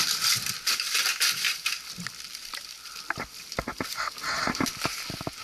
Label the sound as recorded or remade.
recorded